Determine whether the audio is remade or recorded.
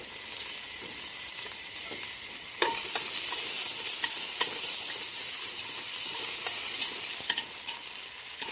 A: recorded